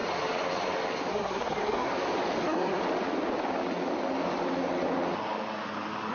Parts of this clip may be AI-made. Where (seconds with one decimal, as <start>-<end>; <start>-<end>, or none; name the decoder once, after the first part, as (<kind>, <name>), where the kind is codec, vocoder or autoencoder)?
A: 1.1-1.9 (codec, SNAC); 2.4-2.8